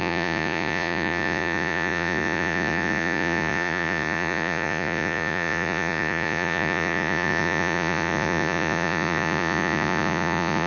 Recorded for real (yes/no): no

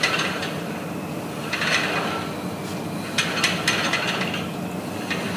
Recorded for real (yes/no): yes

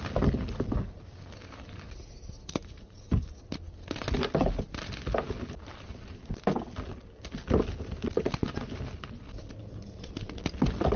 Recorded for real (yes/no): yes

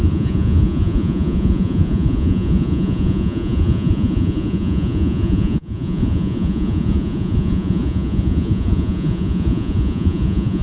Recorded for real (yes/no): no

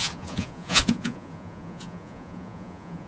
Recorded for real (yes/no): no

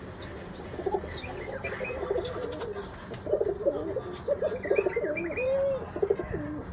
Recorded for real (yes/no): yes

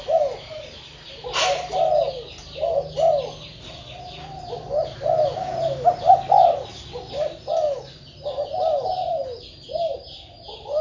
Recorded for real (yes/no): yes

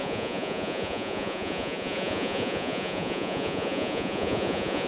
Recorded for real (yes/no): no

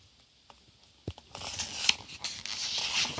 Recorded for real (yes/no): yes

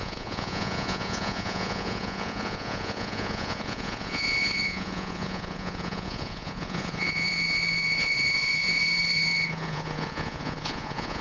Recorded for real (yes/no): no